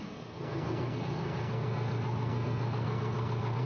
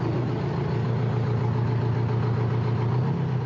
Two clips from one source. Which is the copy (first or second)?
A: first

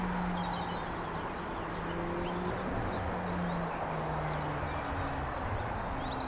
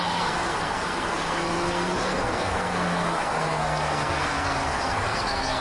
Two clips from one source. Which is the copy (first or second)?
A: second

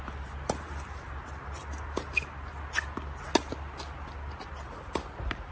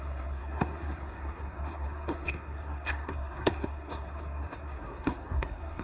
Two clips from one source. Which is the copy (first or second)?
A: second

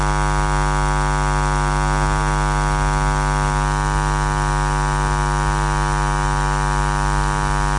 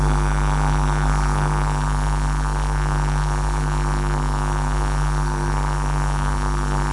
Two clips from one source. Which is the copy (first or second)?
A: second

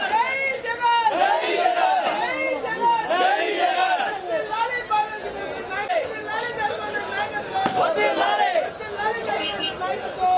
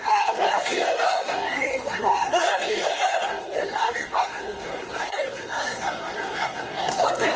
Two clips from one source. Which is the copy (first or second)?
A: second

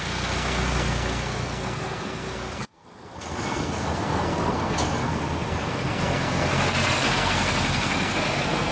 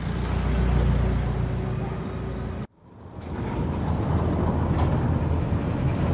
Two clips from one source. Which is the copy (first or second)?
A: first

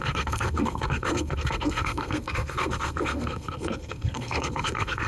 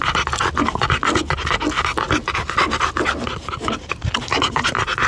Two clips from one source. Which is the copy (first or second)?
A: first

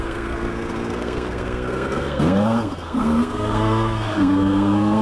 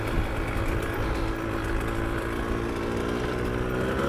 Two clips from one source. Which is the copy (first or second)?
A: first